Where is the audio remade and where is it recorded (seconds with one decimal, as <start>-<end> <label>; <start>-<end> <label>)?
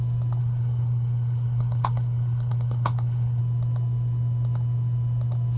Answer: 0.0-0.4 recorded; 0.4-3.4 remade; 3.4-5.6 recorded